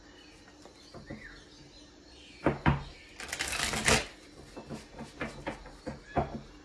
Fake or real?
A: real